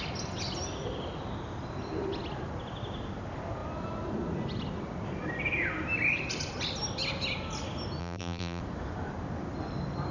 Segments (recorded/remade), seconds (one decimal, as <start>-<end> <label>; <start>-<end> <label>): 0.0-8.0 recorded; 8.0-8.6 remade; 8.6-10.1 recorded